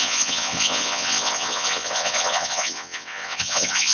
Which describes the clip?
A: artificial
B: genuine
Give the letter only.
A